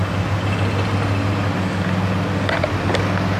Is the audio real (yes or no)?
yes